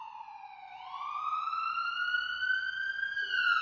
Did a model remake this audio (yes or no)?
no